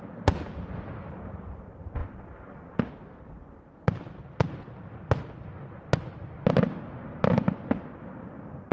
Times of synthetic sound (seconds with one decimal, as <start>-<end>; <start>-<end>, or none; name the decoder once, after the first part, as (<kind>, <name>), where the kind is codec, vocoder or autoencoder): none

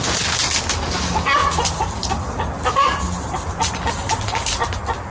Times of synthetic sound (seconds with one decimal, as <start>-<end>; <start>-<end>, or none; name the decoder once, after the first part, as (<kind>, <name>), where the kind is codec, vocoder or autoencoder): none